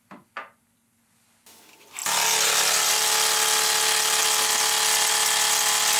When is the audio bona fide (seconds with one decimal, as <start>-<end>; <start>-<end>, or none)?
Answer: 0.0-6.0